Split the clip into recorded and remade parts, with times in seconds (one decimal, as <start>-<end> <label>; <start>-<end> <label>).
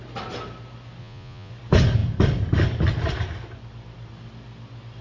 0.0-1.0 recorded; 1.0-1.5 remade; 1.5-5.0 recorded